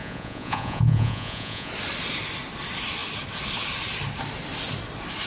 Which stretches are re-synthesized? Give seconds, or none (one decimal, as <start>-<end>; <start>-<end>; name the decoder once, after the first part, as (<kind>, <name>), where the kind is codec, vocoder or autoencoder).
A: 0.0-1.7 (vocoder, Vocos)